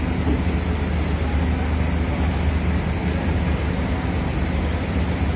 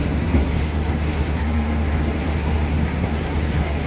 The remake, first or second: second